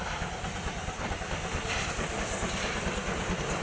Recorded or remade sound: recorded